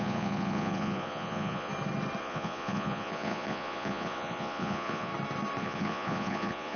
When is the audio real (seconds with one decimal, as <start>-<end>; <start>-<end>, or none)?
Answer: 1.7-2.2; 5.1-5.6